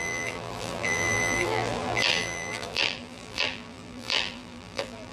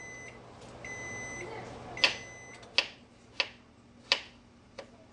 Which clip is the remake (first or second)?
first